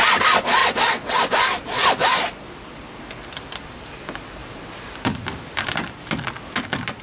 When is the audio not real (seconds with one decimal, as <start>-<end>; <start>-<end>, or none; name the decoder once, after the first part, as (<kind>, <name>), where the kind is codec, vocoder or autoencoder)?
0.6-1.2 (vocoder, WaveNeXt)